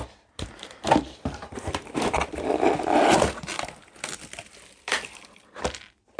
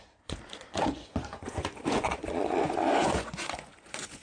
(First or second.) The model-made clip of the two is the second